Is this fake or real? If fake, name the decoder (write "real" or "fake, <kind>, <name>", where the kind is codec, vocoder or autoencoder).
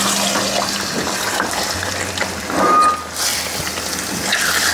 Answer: real